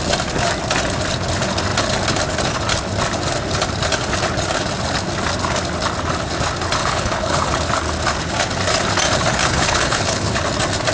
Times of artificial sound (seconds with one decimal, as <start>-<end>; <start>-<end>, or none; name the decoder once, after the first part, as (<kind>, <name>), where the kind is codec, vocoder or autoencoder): 6.8-7.5 (codec, HILCodec); 9.4-10.4